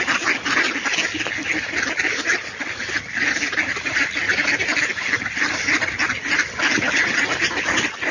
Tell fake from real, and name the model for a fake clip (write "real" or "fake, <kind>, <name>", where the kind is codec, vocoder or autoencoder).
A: real